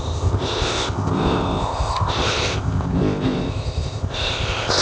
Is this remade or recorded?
remade